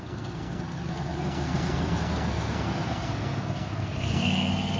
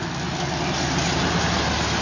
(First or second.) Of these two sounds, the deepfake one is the first